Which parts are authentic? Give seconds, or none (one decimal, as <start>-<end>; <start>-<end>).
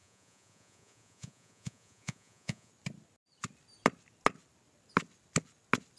2.7-6.0